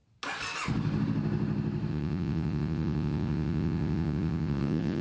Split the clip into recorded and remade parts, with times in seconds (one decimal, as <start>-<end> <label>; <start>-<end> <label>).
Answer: 0.0-1.9 recorded; 1.9-5.0 remade